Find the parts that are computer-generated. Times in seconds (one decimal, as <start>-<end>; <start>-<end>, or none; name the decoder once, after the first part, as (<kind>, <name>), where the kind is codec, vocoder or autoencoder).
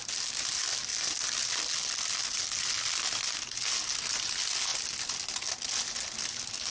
none